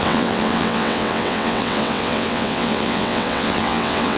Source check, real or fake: fake